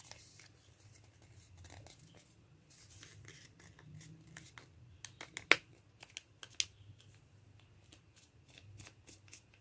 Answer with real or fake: real